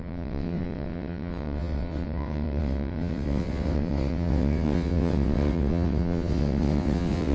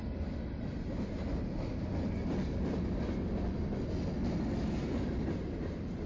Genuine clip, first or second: second